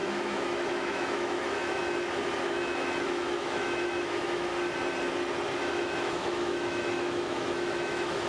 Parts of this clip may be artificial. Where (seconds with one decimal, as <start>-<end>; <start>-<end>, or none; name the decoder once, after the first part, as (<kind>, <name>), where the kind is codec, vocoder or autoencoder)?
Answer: 0.0-1.8 (autoencoder, DAC-VAE); 2.4-4.5; 5.6-8.3